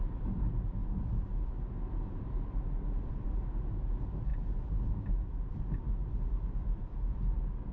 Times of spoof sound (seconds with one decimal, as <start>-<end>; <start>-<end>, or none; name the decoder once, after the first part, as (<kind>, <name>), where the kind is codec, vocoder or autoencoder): none